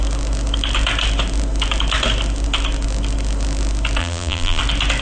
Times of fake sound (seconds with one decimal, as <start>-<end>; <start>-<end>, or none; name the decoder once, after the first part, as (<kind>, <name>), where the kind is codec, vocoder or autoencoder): 4.0-4.6 (vocoder, BigVGAN v2)